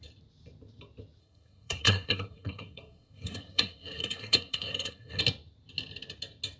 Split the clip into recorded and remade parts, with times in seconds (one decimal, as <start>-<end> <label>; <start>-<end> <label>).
0.0-1.2 recorded; 1.2-5.2 remade; 5.2-6.6 recorded